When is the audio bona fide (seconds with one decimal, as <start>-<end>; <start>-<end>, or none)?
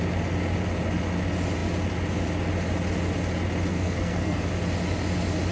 0.0-3.7; 4.4-5.5